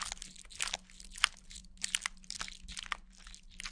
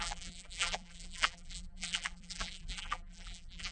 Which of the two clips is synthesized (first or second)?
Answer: second